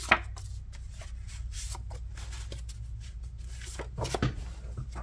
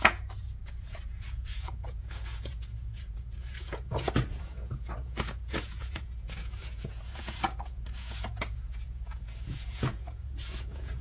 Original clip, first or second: first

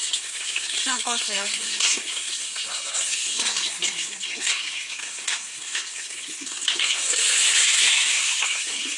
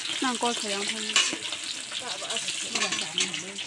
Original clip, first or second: second